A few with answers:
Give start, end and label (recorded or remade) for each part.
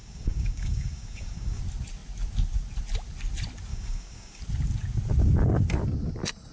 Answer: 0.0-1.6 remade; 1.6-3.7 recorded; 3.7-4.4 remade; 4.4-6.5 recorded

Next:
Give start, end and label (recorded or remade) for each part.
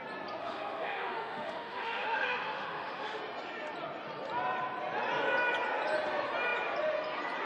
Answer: 0.0-0.4 recorded; 0.4-3.2 remade; 3.2-7.5 recorded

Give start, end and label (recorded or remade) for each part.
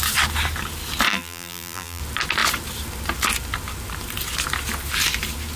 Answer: 0.0-1.1 recorded; 1.1-2.0 remade; 2.0-5.6 recorded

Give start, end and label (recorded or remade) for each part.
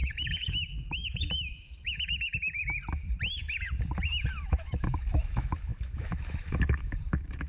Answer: 0.0-2.6 remade; 2.6-4.4 recorded; 4.4-7.5 remade